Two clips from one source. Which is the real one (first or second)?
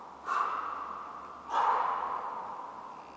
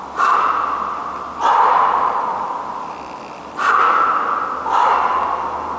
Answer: first